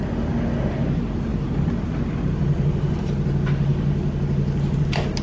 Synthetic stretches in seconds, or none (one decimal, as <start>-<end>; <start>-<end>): none